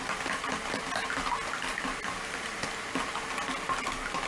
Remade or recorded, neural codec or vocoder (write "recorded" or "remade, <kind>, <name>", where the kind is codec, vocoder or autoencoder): recorded